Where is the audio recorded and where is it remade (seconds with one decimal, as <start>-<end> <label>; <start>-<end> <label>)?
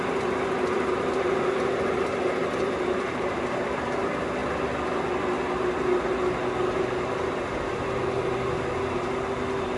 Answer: 0.0-2.4 recorded; 2.4-3.9 remade; 3.9-9.8 recorded